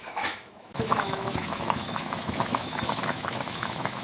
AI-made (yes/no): yes